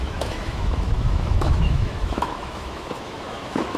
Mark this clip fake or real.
fake